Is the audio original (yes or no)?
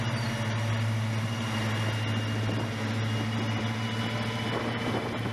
yes